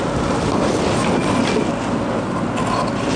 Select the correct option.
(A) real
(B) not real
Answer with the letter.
A